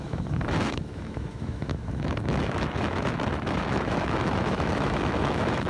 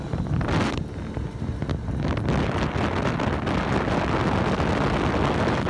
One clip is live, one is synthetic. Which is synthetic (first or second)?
first